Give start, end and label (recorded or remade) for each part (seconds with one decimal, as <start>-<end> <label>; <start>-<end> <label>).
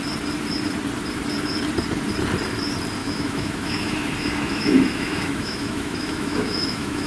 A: 0.0-3.0 recorded; 3.0-7.1 remade